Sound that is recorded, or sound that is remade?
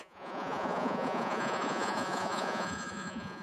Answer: remade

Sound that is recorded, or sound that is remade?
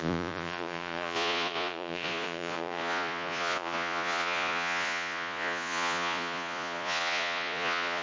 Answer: remade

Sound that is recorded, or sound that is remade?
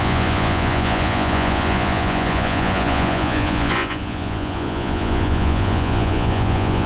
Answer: remade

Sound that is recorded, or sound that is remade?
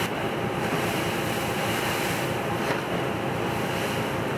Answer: recorded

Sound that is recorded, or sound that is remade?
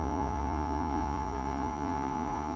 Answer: remade